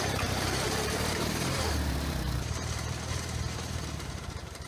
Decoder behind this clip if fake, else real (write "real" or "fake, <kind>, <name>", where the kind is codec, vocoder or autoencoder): fake, vocoder, BigVGAN v2